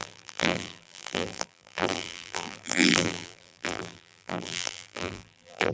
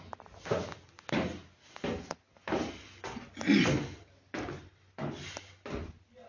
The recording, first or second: second